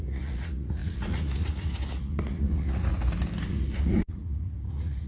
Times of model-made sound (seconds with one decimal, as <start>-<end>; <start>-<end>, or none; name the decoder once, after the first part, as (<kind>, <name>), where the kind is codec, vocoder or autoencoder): 0.0-2.9 (vocoder, Vocos); 3.5-5.1